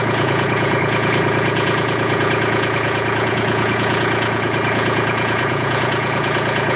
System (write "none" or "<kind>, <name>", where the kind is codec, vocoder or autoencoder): vocoder, Vocos